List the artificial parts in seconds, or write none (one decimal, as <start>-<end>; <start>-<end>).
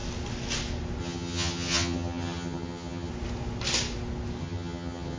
1.0-3.1; 4.4-5.2